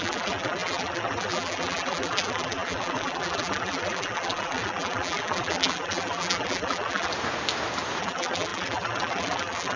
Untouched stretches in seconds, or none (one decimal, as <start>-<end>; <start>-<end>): 7.1-8.0